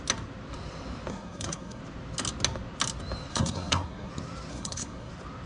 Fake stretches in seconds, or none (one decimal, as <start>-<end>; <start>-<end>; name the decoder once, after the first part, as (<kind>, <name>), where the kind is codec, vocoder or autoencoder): 1.1-1.8 (codec, SNAC); 3.3-4.1; 4.5-5.1